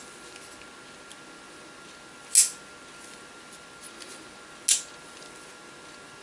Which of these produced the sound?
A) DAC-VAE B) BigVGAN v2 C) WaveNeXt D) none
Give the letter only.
D